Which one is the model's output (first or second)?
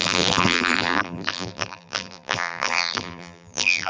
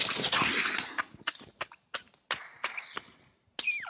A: first